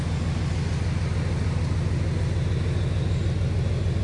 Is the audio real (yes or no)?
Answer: yes